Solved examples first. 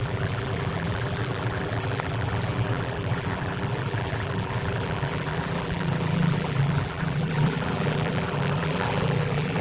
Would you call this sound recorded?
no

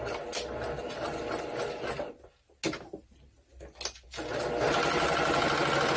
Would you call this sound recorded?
yes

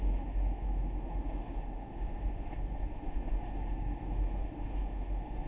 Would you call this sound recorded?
no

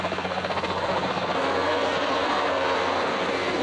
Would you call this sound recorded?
no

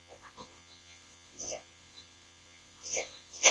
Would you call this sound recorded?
no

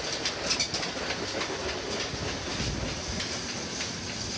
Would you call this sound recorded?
yes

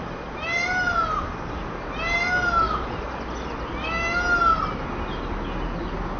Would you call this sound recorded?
yes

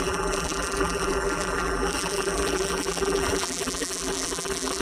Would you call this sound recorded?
no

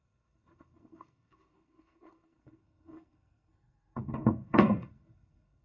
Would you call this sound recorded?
no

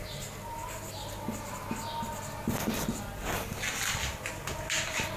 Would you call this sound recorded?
yes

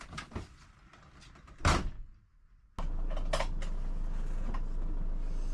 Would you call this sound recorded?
yes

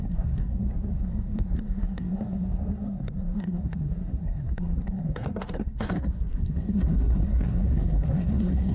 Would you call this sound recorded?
no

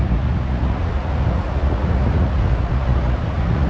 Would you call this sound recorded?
no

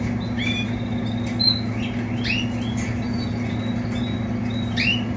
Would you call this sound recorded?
yes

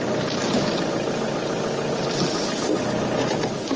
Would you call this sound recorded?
yes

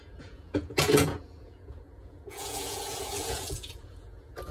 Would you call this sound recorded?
no